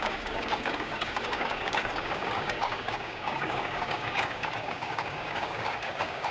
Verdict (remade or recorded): remade